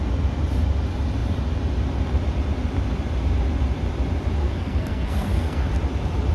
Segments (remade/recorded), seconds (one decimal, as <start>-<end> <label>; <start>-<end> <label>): 0.0-4.4 recorded; 4.4-5.7 remade; 5.7-6.3 recorded